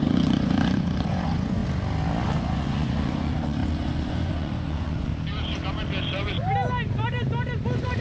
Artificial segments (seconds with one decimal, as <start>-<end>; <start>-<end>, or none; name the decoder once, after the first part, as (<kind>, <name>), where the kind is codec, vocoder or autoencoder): 0.0-1.6 (vocoder, Vocos); 2.3-5.1